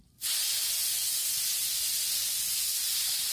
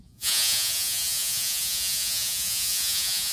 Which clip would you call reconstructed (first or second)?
second